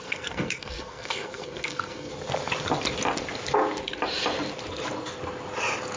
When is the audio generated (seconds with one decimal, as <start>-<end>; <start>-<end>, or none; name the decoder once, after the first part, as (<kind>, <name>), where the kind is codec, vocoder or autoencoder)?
0.0-2.1 (codec, SNAC)